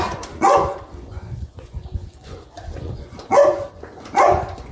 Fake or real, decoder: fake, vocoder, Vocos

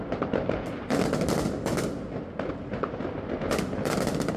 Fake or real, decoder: real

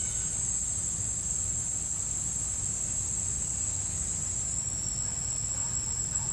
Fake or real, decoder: real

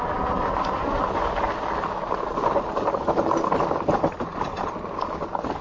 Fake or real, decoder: real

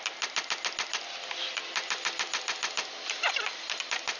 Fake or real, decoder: real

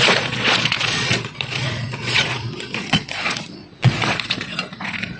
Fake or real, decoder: fake, vocoder, Vocos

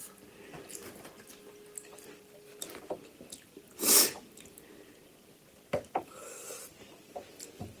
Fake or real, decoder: real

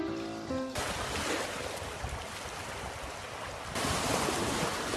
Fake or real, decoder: real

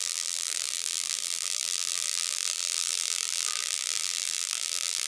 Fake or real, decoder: fake, vocoder, BigVGAN v2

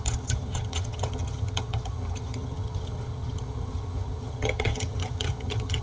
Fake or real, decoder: fake, vocoder, HiFi-GAN